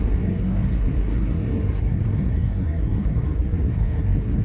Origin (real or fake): fake